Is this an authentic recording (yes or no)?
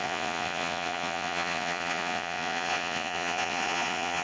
no